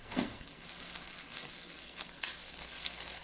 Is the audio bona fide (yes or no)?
no